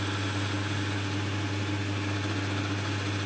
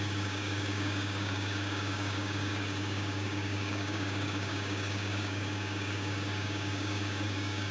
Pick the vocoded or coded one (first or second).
second